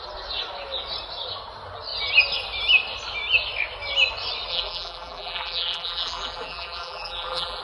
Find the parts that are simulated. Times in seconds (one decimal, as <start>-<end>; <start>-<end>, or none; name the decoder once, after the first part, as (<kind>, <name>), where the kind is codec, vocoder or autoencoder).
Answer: 4.5-7.6 (vocoder, BigVGAN v2)